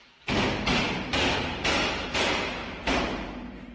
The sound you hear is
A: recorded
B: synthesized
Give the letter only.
A